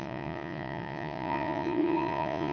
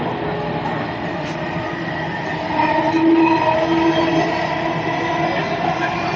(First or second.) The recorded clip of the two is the second